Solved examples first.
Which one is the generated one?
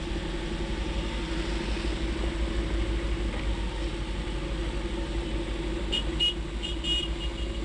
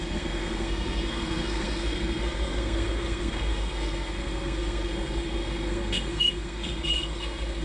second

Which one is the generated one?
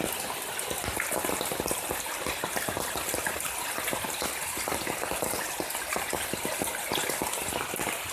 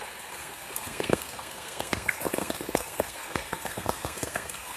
second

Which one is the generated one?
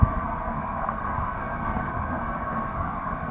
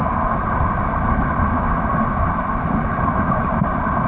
first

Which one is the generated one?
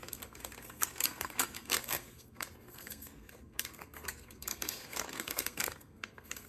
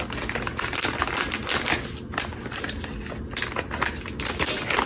first